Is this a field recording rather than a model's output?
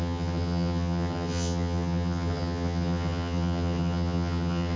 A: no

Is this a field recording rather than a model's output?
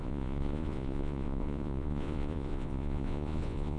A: no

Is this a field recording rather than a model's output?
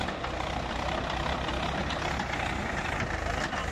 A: yes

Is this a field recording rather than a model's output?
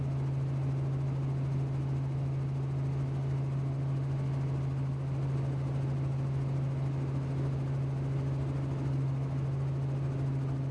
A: yes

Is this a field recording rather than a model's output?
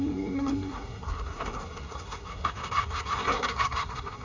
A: no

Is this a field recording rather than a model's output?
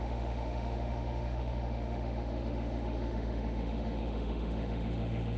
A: no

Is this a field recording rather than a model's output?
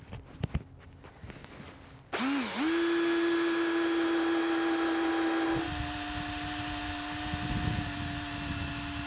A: yes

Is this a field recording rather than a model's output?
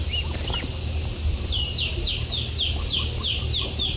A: yes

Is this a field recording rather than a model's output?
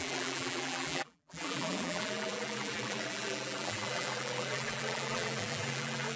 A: no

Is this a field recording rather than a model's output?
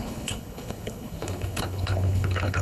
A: no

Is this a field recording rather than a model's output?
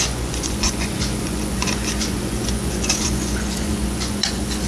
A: no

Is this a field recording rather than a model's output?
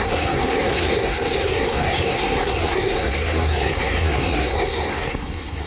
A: no